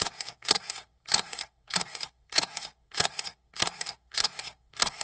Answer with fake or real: fake